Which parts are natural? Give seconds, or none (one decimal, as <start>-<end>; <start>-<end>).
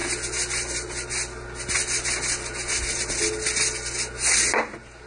0.0-5.1